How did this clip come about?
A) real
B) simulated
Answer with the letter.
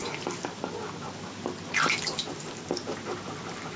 A